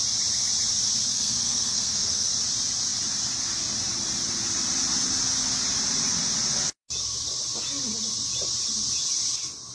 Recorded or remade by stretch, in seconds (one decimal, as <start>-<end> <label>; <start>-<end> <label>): 0.0-1.1 recorded; 1.1-2.3 remade; 2.3-9.7 recorded